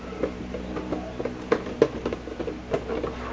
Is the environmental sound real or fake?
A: real